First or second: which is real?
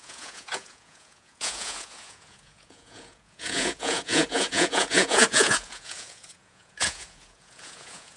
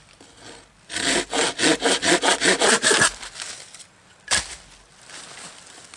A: second